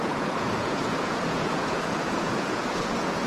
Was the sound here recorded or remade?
remade